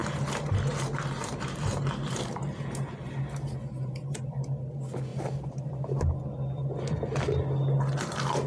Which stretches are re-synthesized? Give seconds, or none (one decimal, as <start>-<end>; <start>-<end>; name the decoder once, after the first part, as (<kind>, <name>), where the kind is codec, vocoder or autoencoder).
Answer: 0.0-2.9 (vocoder, BigVGAN v2); 5.1-6.1